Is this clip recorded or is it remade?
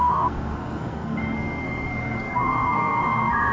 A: remade